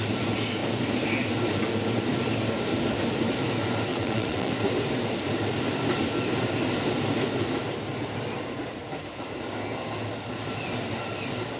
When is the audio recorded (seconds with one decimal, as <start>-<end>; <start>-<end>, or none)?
0.0-3.9; 4.5-11.6